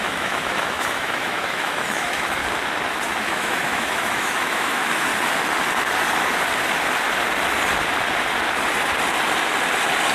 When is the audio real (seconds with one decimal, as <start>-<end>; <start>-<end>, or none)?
2.4-3.2; 5.1-10.1